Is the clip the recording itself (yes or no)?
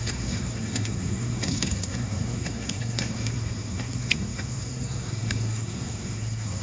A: no